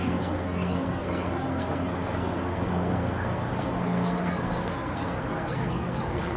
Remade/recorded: remade